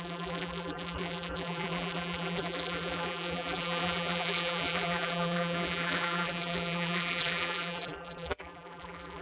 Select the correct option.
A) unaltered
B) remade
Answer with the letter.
B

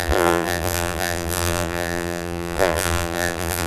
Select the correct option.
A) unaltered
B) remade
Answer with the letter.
B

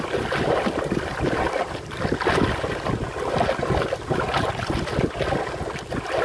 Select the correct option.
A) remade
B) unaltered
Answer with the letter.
B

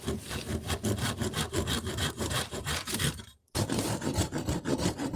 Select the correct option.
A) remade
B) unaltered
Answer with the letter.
A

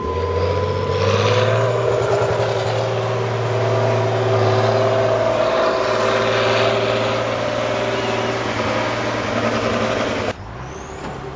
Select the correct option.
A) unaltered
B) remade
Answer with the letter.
A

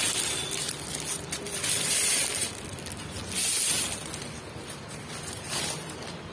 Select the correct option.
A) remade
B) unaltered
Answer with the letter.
B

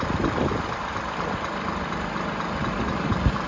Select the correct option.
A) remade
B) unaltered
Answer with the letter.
B